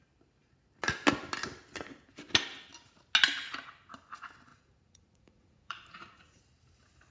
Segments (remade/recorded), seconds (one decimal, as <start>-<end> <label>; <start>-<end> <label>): 0.0-4.5 recorded; 4.5-6.4 remade; 6.4-7.1 recorded